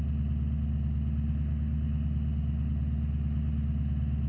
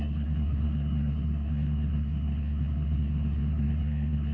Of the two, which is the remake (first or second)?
second